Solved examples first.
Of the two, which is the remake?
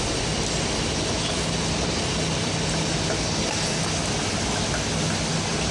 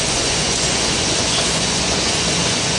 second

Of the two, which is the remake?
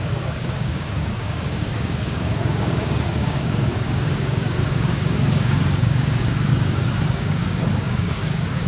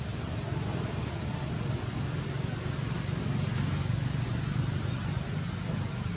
first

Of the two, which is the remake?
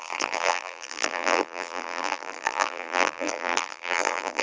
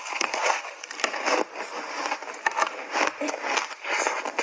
first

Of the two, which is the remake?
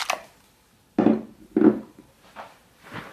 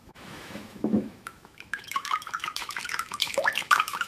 second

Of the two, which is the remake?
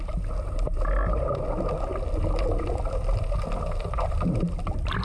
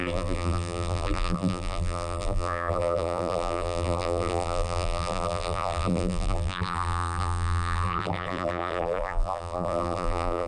second